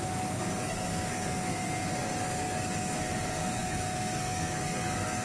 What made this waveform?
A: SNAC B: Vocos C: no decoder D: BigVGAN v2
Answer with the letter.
A